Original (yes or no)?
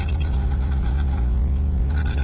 no